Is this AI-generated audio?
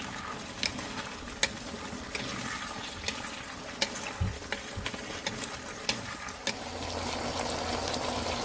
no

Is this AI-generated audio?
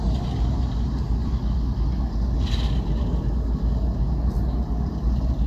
no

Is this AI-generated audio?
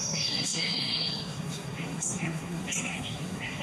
yes